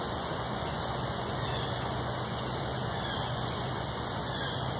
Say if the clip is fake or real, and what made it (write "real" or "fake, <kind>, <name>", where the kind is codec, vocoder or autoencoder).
fake, vocoder, Vocos